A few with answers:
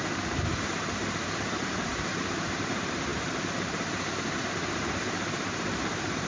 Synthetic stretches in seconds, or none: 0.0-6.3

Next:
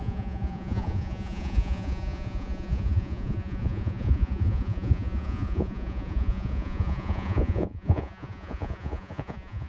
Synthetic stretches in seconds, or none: 0.0-9.7

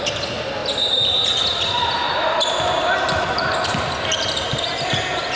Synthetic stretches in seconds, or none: none

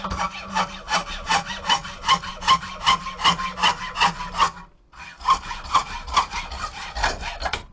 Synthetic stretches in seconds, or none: none

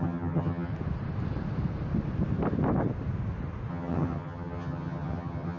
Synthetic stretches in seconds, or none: 0.0-0.7; 3.7-5.6

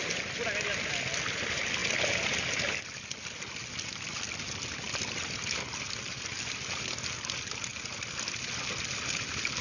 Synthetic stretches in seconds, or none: none

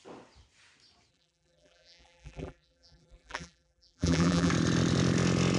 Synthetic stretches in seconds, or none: 1.1-4.5

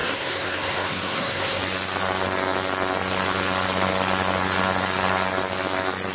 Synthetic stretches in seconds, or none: 0.0-1.6